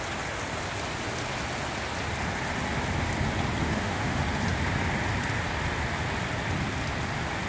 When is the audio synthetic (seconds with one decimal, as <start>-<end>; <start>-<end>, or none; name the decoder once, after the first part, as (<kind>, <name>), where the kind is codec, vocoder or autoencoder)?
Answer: 3.6-4.2 (autoencoder, DAC-VAE)